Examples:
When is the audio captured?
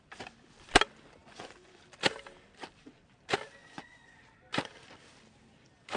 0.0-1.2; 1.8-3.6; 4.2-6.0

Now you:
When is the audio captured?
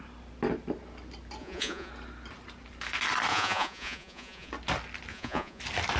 0.0-1.4; 1.9-3.3; 4.5-5.1; 5.6-6.0